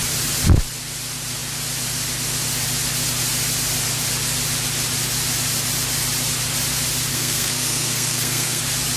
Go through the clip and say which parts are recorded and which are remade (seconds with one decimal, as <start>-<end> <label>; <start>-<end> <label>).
0.0-7.1 recorded; 7.1-8.6 remade; 8.6-9.0 recorded